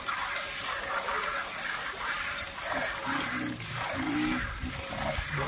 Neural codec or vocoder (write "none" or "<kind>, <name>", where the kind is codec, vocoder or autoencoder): none